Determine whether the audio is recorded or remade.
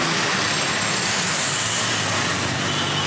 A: recorded